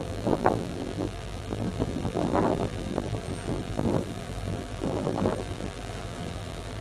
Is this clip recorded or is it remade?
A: remade